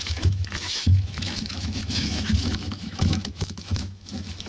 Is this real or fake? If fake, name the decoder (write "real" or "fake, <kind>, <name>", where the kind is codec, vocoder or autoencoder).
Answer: fake, autoencoder, DAC-VAE